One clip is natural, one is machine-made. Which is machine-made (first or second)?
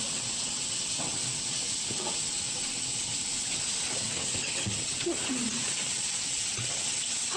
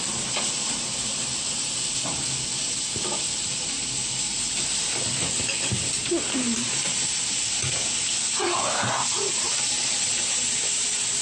first